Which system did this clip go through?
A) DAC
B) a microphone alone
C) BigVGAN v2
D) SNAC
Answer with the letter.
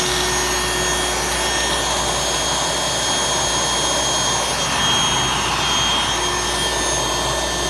B